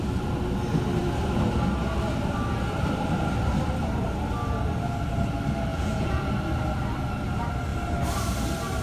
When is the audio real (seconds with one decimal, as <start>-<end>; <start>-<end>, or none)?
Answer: 0.0-5.7; 6.3-8.8